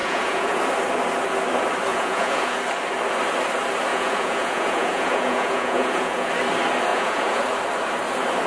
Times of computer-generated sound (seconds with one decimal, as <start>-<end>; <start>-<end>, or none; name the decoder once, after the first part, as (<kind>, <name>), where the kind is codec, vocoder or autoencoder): 0.0-0.6 (vocoder, Vocos); 1.9-2.6; 3.9-6.3; 6.9-7.4